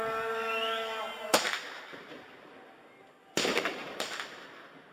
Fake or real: real